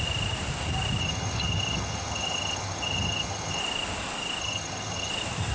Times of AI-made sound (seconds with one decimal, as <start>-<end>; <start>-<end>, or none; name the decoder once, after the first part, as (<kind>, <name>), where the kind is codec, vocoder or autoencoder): 1.0-3.6 (vocoder, HiFi-GAN); 4.4-5.1